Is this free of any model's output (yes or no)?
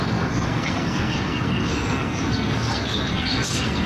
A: no